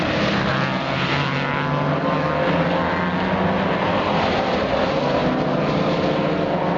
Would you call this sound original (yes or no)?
yes